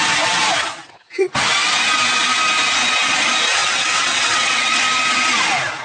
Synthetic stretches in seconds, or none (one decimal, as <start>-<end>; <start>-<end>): 3.6-4.8